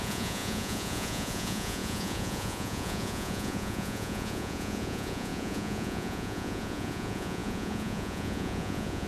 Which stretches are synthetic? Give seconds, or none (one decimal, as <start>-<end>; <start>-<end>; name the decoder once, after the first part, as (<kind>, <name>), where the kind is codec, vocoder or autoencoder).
0.0-9.1 (vocoder, Vocos)